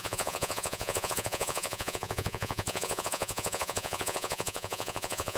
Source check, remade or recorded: remade